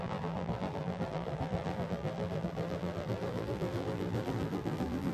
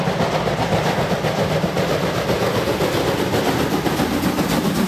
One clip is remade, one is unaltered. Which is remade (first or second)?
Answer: first